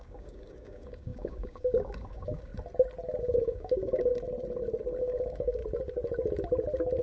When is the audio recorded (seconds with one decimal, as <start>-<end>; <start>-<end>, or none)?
2.5-3.2; 4.1-5.0; 5.6-7.0